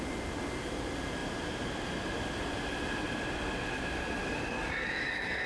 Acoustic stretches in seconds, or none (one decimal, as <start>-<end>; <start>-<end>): 0.0-4.2